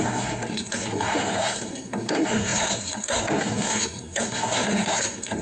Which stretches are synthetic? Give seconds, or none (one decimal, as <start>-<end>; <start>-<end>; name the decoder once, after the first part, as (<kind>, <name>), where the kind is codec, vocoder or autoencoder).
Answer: 0.0-5.4 (codec, SNAC)